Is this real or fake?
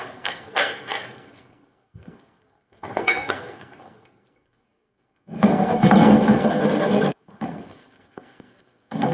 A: fake